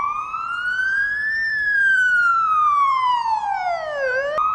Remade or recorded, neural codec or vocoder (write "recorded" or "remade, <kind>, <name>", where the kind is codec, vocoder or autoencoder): remade, vocoder, BigVGAN v2